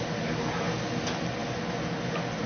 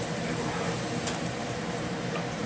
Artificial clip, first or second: second